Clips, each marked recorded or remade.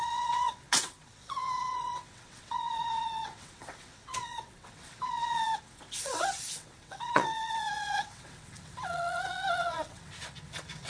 remade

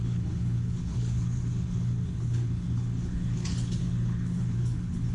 remade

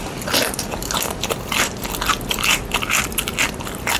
recorded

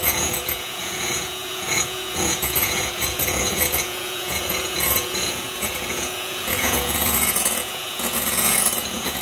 remade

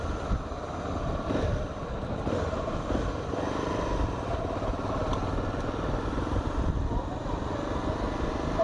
recorded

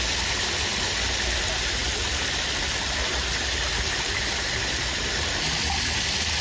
recorded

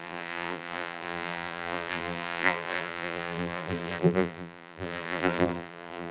remade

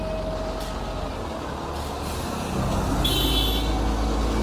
recorded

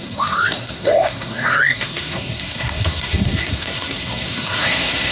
remade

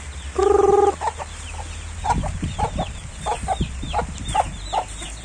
recorded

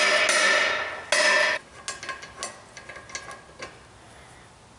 recorded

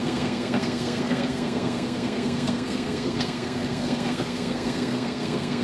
remade